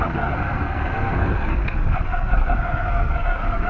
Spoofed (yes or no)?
yes